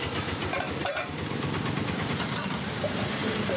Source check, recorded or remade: remade